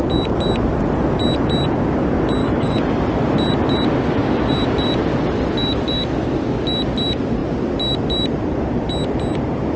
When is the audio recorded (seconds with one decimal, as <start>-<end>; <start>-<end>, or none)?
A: 0.0-2.4; 3.0-9.8